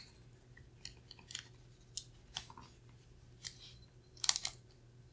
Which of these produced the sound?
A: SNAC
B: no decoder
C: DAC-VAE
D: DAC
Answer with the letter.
B